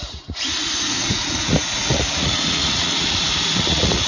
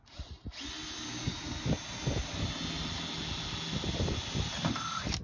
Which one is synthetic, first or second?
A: first